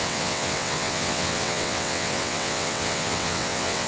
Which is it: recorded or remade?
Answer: remade